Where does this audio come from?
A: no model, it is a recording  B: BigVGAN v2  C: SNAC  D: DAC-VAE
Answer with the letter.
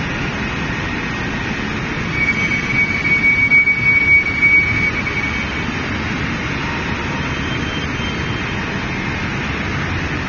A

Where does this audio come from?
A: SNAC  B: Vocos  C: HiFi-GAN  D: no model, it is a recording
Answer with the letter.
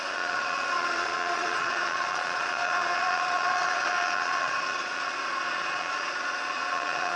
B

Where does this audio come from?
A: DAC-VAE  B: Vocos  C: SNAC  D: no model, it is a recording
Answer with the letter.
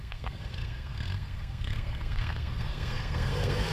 C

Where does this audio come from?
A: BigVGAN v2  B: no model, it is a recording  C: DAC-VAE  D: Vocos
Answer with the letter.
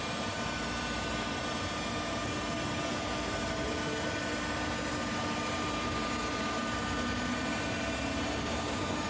A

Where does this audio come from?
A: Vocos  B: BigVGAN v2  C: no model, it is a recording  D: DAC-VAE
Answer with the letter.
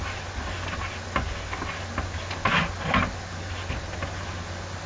C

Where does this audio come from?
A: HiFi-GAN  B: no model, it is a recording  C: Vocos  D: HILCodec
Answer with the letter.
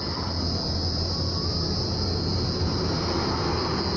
B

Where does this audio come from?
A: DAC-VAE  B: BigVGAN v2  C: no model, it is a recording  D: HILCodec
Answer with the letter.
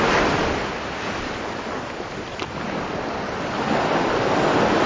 C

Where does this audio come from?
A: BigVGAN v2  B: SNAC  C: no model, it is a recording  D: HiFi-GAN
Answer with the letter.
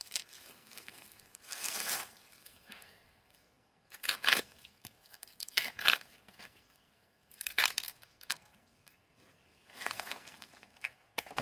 B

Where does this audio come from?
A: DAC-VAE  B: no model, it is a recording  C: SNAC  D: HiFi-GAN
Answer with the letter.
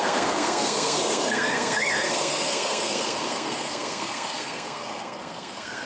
C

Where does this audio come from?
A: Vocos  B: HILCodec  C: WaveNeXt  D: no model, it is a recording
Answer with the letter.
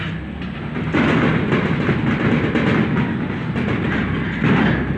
D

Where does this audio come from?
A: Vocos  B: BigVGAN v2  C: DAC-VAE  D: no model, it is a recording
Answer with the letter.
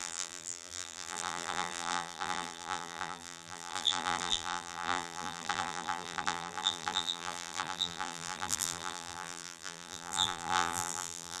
B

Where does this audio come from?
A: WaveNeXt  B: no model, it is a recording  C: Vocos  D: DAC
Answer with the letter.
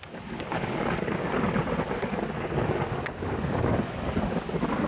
D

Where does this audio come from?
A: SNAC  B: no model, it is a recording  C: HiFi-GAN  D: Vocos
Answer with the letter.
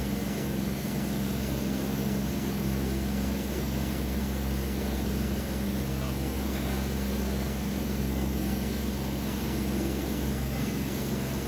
A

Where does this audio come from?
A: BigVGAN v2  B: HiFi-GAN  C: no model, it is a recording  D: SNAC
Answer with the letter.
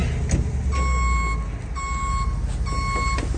C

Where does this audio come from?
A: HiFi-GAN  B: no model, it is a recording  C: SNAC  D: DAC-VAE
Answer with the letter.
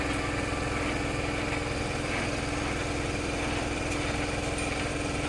B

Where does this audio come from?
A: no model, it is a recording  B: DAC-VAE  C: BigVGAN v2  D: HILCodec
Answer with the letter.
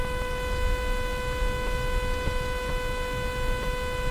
A